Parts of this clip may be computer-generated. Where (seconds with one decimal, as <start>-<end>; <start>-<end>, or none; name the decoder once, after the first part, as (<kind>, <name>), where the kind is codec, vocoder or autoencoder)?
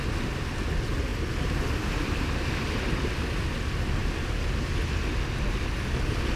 none